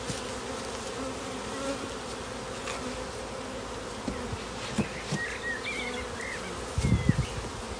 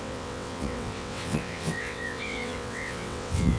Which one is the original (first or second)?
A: first